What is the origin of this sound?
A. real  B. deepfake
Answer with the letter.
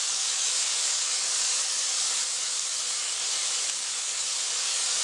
B